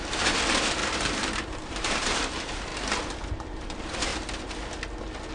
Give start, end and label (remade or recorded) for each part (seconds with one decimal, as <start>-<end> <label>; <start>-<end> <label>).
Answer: 0.0-0.8 remade; 0.8-1.5 recorded; 1.5-2.7 remade; 2.7-3.3 recorded; 3.3-4.1 remade; 4.1-5.3 recorded